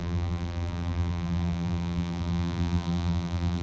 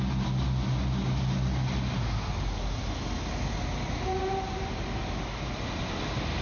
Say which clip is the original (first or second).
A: second